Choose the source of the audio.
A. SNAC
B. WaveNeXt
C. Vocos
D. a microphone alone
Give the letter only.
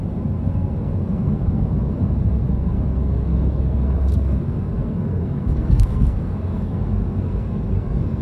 A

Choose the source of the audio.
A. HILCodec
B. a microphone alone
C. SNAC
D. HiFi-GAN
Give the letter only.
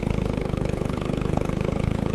A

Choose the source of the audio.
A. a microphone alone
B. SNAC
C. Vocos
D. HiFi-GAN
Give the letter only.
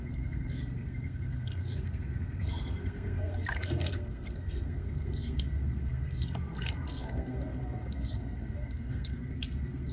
B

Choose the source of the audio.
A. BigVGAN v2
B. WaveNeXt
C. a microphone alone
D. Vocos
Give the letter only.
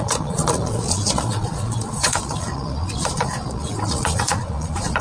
D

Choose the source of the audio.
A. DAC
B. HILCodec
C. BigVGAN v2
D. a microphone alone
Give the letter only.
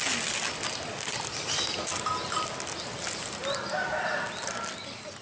D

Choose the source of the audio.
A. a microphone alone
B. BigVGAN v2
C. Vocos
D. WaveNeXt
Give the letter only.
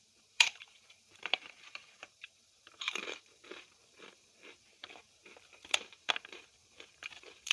B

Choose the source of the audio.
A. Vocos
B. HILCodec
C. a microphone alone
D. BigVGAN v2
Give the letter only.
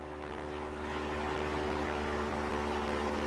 C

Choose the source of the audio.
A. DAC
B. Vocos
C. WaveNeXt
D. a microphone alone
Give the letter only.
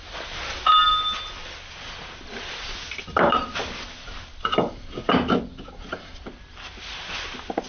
D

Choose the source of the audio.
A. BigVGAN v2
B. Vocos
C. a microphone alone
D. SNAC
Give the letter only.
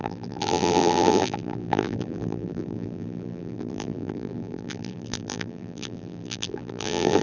A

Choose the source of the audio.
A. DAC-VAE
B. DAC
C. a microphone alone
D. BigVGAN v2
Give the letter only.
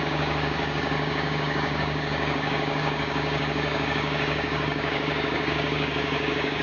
B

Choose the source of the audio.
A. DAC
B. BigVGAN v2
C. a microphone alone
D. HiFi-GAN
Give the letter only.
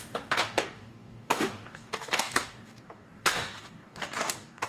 A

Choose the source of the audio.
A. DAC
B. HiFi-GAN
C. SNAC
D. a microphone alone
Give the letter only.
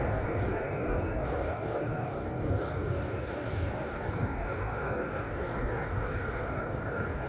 A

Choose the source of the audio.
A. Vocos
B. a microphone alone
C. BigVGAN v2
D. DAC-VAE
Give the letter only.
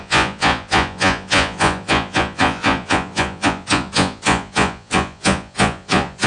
A